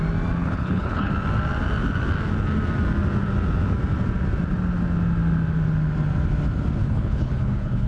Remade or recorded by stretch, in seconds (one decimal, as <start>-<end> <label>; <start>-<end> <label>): 0.0-0.4 recorded; 0.4-1.1 remade; 1.1-6.8 recorded; 6.8-7.9 remade